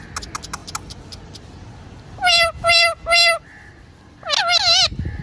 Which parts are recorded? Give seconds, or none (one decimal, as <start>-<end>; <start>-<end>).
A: 0.0-5.2